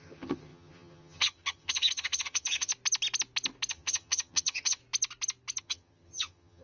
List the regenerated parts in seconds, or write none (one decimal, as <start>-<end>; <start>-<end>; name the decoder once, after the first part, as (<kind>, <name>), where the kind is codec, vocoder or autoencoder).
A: 0.0-2.7 (vocoder, HiFi-GAN); 3.7-4.8; 5.6-6.6